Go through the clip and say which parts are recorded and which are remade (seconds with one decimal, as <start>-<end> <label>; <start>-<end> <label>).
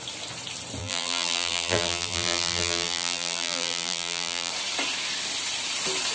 0.0-0.8 recorded; 0.8-4.5 remade; 4.5-6.1 recorded